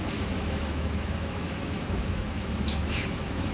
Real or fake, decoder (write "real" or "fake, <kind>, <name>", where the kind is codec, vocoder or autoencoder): fake, autoencoder, DAC-VAE